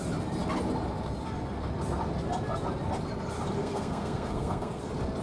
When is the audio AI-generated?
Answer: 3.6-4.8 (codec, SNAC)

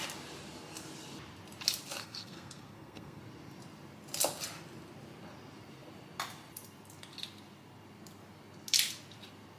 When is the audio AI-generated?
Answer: 2.0-3.2 (codec, SNAC)

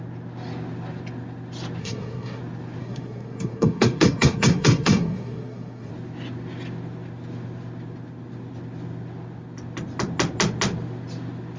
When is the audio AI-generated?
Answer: 1.8-2.4 (codec, SNAC); 2.8-5.9